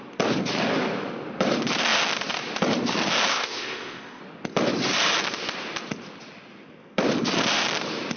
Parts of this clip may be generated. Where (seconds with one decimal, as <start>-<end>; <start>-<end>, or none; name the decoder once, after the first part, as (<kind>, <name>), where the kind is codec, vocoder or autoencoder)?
3.3-4.2 (codec, ZipCodec)